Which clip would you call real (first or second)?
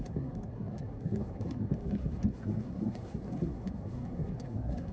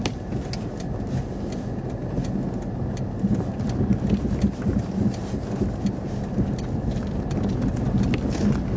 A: second